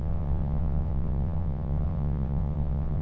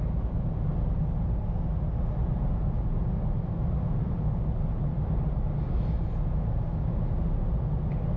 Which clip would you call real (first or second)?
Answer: second